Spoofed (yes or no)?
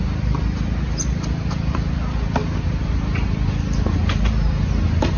no